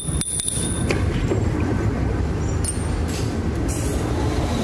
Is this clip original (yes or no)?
yes